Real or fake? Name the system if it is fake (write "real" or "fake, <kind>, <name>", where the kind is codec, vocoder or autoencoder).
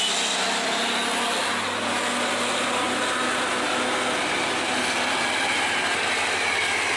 real